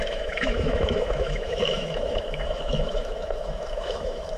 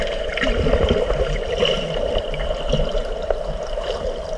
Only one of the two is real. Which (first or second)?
second